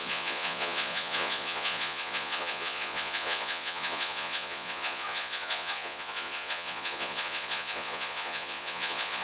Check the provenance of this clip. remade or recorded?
remade